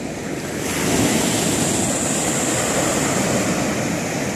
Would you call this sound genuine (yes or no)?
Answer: yes